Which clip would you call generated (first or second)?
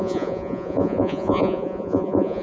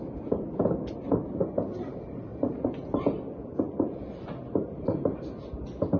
first